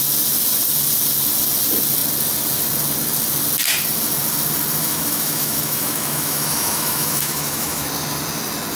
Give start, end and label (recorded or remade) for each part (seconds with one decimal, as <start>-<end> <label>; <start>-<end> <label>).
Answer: 0.0-4.8 recorded; 4.8-7.9 remade; 7.9-8.8 recorded